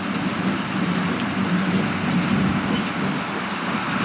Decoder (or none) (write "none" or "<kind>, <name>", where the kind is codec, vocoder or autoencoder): none